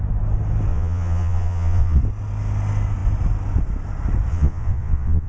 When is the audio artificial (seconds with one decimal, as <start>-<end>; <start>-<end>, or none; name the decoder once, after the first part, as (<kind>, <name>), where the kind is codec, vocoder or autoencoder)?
0.7-2.0 (vocoder, Vocos); 4.3-5.3